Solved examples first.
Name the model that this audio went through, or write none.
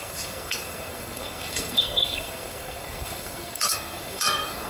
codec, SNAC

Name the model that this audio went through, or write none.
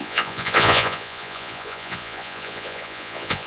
vocoder, Vocos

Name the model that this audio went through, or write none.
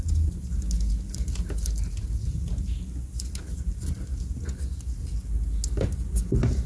none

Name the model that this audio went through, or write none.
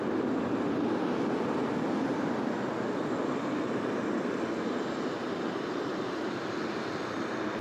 none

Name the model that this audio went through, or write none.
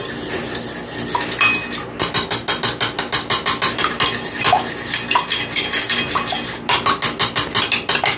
none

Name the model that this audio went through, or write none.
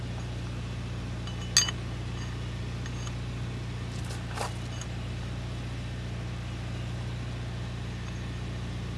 none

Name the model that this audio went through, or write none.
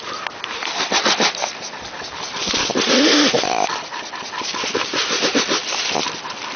none